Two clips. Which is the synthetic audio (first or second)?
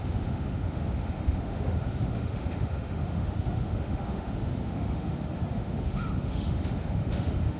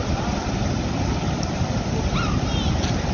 first